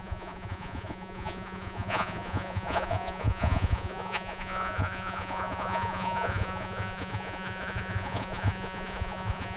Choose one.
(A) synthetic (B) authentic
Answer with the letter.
A